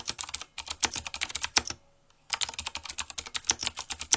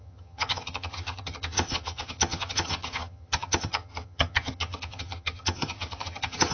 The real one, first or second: first